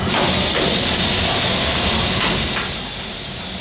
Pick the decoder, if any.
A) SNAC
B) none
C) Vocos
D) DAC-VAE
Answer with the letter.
B